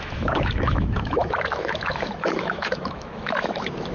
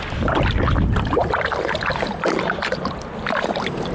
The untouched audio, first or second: second